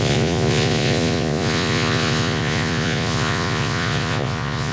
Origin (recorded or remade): remade